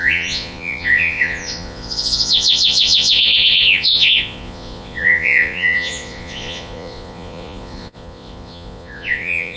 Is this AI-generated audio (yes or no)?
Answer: yes